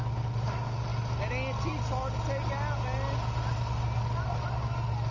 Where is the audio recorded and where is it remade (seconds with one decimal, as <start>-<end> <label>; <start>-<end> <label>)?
0.0-5.1 recorded